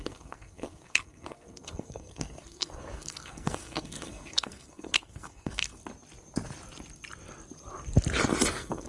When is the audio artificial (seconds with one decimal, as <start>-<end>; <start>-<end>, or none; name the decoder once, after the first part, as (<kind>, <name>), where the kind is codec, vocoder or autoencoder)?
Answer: 0.0-5.8 (codec, SNAC); 8.5-8.9